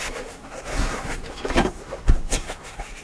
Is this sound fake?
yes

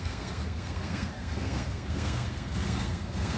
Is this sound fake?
yes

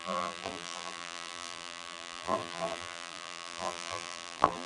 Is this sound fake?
yes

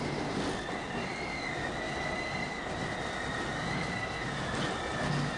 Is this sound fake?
no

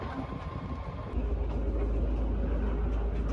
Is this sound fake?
no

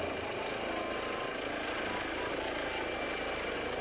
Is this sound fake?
no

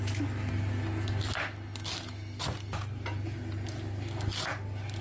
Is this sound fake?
no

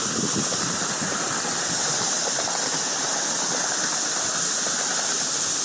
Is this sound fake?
no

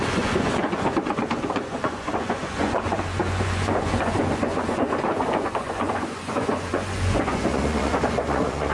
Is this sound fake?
yes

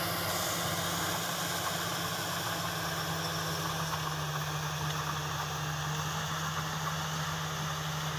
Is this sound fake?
no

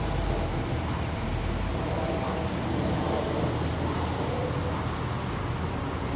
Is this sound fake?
no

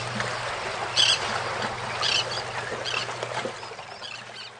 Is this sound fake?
no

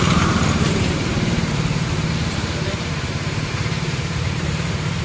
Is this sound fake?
yes